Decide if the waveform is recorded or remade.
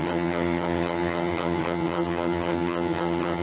remade